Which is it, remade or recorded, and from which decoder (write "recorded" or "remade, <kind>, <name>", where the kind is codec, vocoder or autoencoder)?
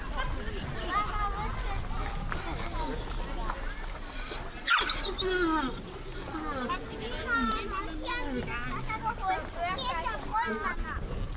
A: recorded